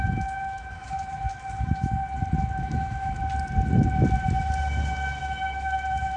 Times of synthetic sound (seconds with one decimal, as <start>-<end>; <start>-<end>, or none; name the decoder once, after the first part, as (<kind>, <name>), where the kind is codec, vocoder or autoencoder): 0.0-2.0 (autoencoder, DAC-VAE); 2.6-3.2; 5.2-6.2